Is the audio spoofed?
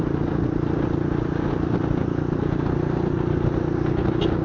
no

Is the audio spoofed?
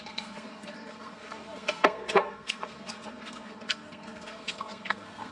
yes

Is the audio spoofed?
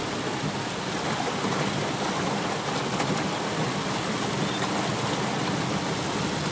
no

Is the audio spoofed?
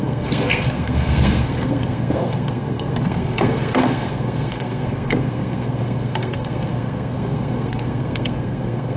yes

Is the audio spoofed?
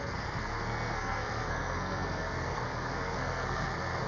yes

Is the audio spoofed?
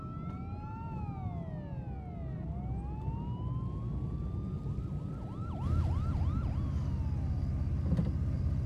no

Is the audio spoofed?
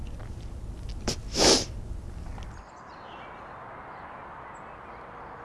no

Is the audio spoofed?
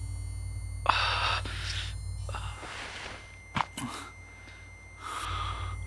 no